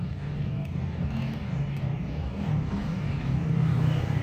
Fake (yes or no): yes